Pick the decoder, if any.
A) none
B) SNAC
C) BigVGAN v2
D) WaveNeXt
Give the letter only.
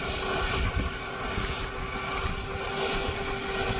A